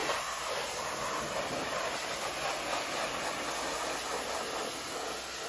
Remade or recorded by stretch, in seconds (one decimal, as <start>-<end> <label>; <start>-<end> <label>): 0.0-5.5 recorded